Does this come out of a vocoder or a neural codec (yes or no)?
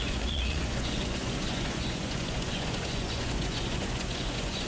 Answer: yes